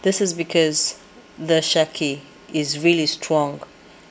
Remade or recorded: recorded